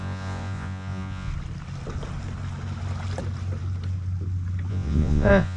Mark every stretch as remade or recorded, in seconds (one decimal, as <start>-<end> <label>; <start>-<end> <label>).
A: 0.0-1.3 remade; 1.3-4.7 recorded; 4.7-5.6 remade